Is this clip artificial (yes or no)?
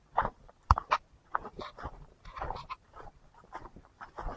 yes